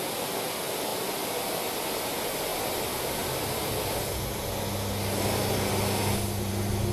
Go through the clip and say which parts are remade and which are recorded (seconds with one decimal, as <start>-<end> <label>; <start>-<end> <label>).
0.0-6.9 recorded